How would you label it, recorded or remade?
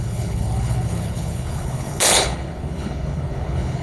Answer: remade